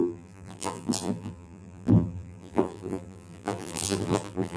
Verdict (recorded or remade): remade